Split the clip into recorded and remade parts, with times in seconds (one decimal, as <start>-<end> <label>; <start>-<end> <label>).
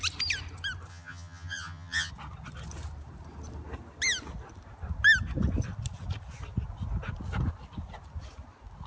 0.0-0.9 recorded; 0.9-2.1 remade; 2.1-8.9 recorded